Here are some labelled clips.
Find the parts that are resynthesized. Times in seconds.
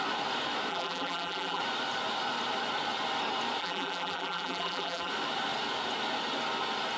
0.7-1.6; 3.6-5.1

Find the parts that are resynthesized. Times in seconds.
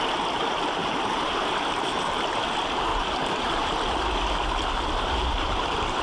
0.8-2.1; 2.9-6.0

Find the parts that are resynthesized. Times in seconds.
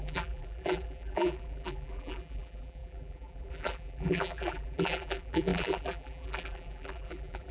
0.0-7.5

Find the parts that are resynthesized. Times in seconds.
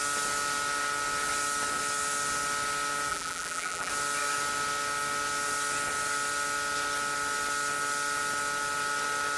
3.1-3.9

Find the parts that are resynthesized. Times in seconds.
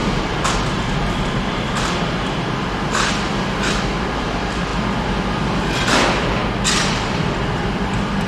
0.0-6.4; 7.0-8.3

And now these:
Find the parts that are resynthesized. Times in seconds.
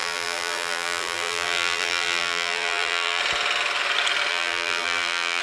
0.0-3.2; 4.3-5.4